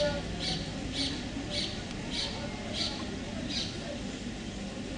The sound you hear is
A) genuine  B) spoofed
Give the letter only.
A